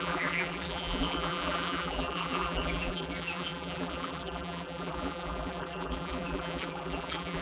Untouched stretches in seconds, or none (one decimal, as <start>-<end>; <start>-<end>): none